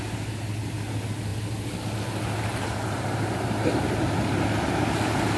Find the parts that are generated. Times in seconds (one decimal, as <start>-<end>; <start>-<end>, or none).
2.5-3.8